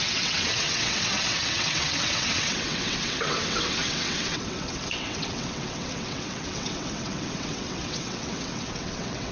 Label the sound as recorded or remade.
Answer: remade